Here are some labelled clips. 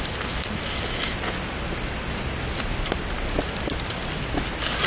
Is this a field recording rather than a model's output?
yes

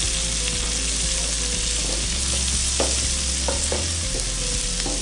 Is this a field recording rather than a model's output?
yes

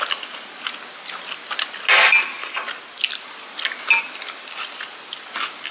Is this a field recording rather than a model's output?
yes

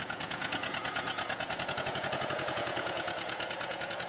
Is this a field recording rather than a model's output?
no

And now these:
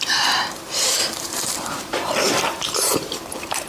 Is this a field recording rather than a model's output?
no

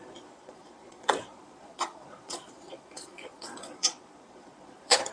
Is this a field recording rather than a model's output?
no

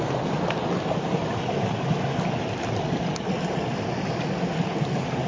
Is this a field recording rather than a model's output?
yes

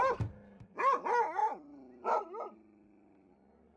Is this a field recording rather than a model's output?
yes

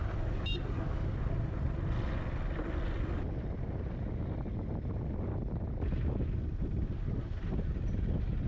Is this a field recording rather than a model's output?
yes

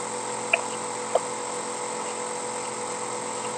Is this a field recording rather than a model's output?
yes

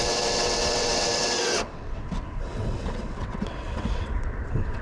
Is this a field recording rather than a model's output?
no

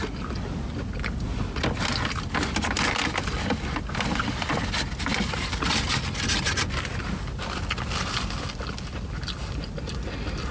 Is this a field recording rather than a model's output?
yes